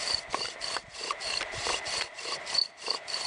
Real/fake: fake